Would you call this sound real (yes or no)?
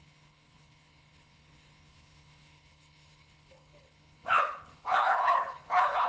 no